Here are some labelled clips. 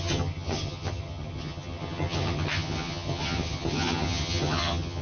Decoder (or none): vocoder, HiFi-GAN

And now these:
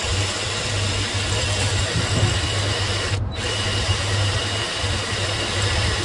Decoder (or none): vocoder, BigVGAN v2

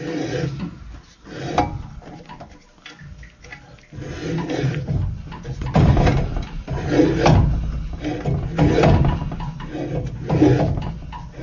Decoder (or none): none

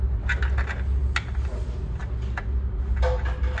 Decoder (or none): none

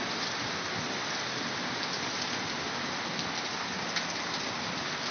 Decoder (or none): none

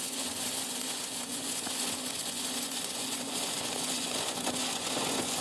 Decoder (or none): vocoder, Vocos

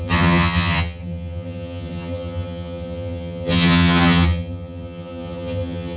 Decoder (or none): vocoder, HiFi-GAN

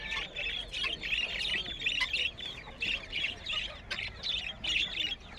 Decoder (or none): none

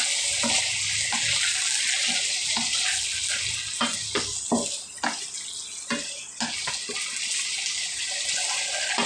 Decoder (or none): none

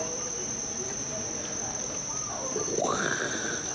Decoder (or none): vocoder, BigVGAN v2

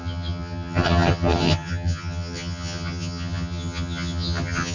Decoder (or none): vocoder, HiFi-GAN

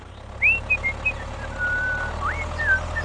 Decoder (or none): none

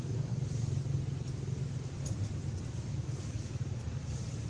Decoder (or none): vocoder, BigVGAN v2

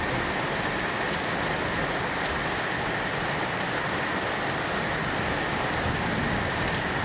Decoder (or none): none